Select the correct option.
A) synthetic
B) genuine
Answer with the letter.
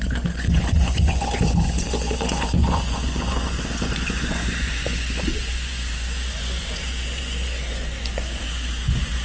A